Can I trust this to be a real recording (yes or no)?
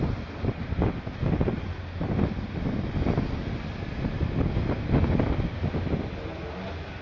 yes